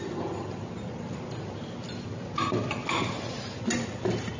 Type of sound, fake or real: real